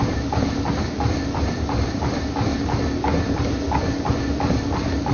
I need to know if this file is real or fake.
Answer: real